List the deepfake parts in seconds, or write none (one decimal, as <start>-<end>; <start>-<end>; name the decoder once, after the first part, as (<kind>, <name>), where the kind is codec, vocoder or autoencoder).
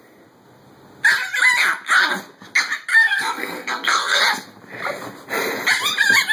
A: 2.9-4.2 (codec, SNAC)